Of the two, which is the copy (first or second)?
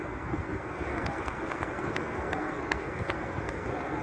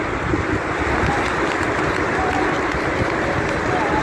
first